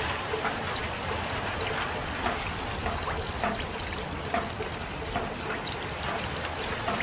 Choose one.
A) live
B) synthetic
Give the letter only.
A